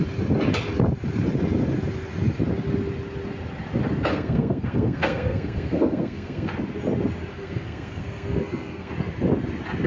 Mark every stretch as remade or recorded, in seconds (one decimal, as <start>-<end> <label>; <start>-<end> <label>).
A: 0.0-4.1 recorded; 4.1-6.5 remade; 6.5-7.3 recorded; 7.3-8.9 remade; 8.9-9.9 recorded